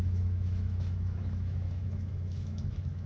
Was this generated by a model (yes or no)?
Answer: yes